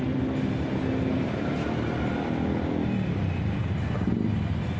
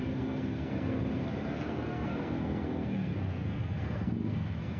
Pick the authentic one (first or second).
first